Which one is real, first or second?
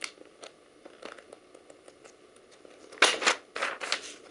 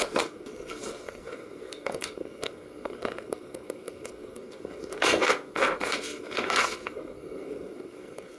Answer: first